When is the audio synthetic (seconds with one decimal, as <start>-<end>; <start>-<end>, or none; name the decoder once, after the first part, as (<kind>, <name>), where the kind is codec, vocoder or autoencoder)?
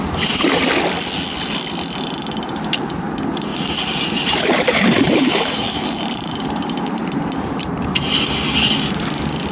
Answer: 3.5-8.1 (vocoder, BigVGAN v2)